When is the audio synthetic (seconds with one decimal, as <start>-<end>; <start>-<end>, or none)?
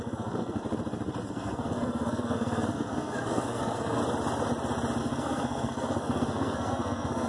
0.0-0.6; 1.3-4.0; 5.0-7.3